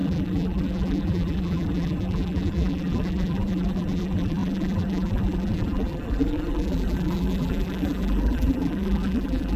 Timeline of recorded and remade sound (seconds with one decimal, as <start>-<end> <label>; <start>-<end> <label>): 0.0-9.6 remade